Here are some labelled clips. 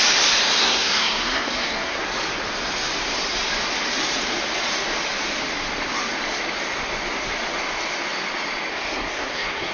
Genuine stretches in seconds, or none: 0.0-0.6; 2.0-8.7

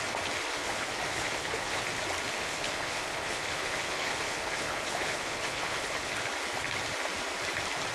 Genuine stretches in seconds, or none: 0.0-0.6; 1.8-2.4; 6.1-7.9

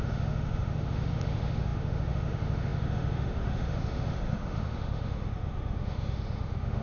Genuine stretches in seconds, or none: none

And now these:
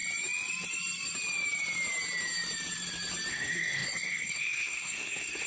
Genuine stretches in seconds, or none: 0.0-3.3

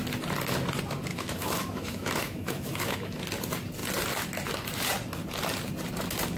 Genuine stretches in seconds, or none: 0.0-1.1; 3.2-6.4

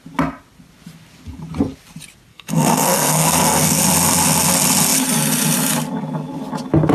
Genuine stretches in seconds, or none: 0.0-2.3; 3.8-6.9

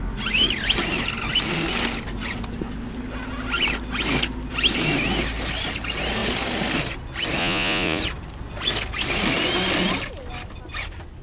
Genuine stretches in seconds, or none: 0.0-7.4; 8.0-11.2